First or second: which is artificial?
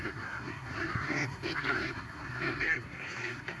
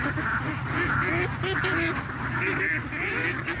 first